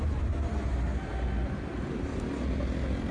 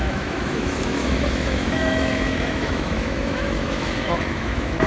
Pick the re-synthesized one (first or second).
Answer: second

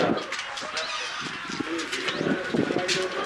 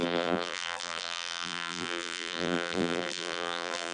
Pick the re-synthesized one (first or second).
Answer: second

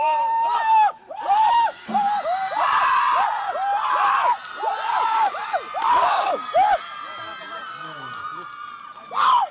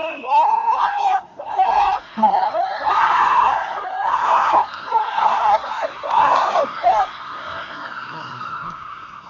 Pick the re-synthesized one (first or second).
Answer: second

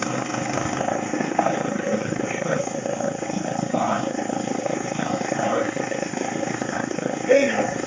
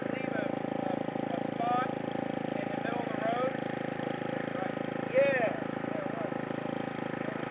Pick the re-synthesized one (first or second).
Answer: first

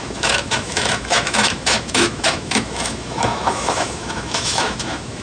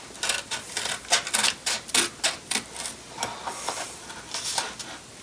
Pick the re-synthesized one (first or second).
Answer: first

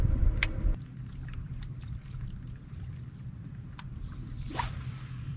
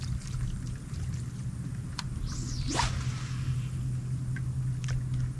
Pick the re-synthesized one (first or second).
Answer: first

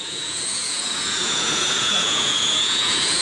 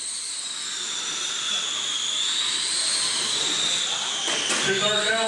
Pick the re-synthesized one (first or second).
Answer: first